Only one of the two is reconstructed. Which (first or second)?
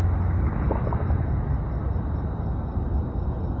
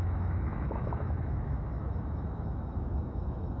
second